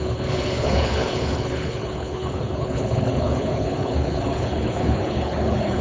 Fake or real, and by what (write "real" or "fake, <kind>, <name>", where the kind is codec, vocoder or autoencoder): fake, codec, HILCodec